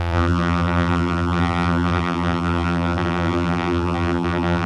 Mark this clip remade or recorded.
remade